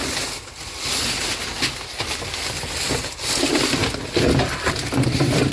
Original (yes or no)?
yes